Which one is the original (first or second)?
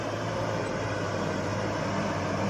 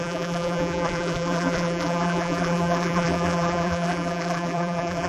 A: first